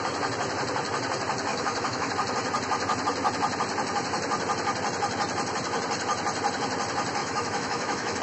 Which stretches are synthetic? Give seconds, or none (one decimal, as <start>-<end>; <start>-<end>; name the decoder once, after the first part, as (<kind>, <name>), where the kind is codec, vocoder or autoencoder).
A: 1.5-2.1 (autoencoder, DAC-VAE); 7.2-8.2